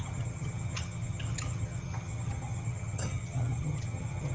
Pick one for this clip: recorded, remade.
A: remade